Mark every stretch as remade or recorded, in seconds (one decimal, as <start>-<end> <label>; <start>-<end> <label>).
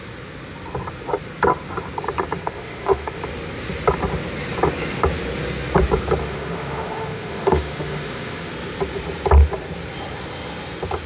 0.0-2.4 recorded; 2.4-3.2 remade; 3.2-6.2 recorded; 6.2-8.5 remade; 8.5-11.1 recorded